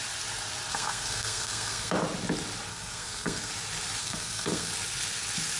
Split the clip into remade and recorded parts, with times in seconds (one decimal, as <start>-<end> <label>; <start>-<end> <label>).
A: 0.0-0.7 recorded; 0.7-1.9 remade; 1.9-2.7 recorded; 2.7-3.5 remade; 3.5-4.0 recorded; 4.0-4.7 remade; 4.7-5.6 recorded